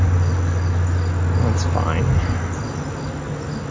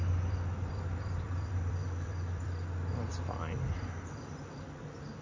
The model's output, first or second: second